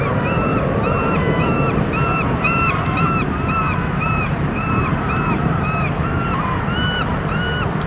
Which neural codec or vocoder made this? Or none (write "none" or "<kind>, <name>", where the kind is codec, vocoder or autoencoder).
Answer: vocoder, BigVGAN v2